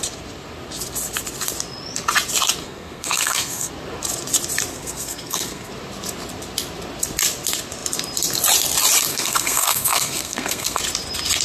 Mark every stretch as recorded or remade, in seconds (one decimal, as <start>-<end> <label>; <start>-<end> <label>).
0.0-2.6 recorded; 2.6-3.7 remade; 3.7-4.7 recorded; 4.7-5.7 remade; 5.7-9.1 recorded; 9.1-10.8 remade; 10.8-11.4 recorded